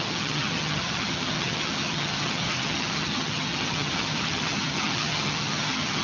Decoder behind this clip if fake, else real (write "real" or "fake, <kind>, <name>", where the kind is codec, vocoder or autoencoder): fake, vocoder, HiFi-GAN